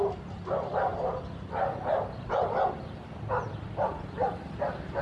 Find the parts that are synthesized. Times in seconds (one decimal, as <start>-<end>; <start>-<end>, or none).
none